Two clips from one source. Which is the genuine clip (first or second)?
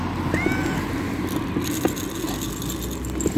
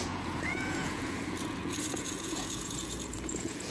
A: first